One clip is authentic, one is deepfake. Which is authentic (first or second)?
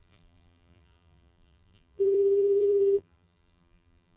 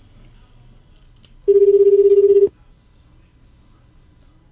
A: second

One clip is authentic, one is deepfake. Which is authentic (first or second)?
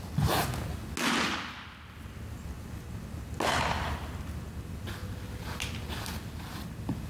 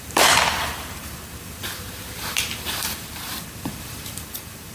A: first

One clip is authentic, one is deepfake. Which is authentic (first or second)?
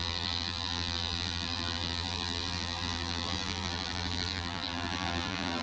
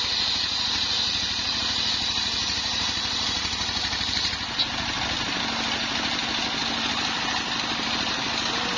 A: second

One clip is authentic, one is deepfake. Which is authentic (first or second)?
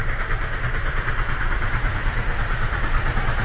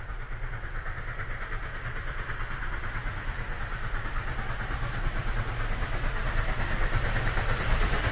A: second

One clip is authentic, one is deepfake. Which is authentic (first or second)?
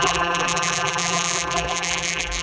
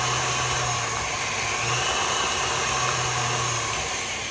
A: second